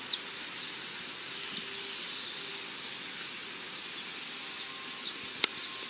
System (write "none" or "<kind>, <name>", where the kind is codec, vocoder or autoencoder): none